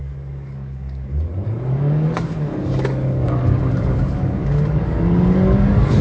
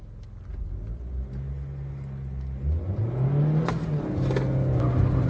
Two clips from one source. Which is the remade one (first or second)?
first